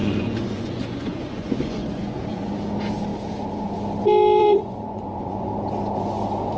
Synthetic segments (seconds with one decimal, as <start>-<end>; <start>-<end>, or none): 0.0-2.5; 4.4-5.5